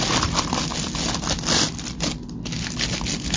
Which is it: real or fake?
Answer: real